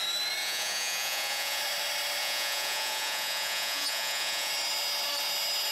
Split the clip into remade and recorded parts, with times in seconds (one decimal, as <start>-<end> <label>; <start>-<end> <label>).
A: 0.0-0.4 recorded; 0.4-1.6 remade; 1.6-2.2 recorded; 2.2-4.5 remade; 4.5-5.7 recorded

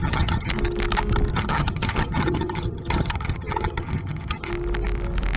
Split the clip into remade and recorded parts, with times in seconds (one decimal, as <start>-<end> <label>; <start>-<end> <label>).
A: 0.0-0.5 remade; 0.5-1.3 recorded; 1.3-4.5 remade; 4.5-5.4 recorded

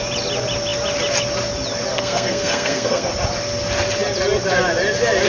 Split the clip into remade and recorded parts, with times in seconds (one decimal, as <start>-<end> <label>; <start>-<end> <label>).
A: 0.0-1.9 recorded; 1.9-3.1 remade; 3.1-5.3 recorded

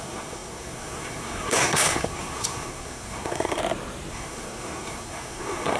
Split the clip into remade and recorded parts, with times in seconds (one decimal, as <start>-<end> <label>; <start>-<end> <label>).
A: 0.0-3.6 remade; 3.6-4.1 recorded; 4.1-5.8 remade

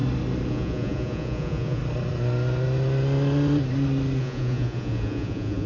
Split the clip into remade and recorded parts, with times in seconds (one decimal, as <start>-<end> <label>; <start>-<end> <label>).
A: 0.0-0.5 recorded; 0.5-1.8 remade; 1.8-4.2 recorded; 4.2-5.7 remade

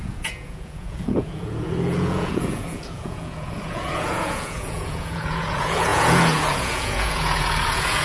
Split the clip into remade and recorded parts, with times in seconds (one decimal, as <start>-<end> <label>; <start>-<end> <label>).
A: 0.0-8.0 remade

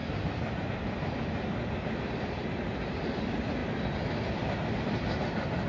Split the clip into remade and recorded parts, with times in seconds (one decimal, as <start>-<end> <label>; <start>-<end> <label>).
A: 0.0-5.7 recorded

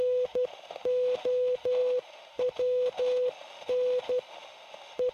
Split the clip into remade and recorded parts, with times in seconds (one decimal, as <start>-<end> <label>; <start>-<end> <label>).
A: 0.0-5.1 remade